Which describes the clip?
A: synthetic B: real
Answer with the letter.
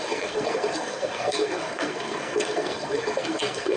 A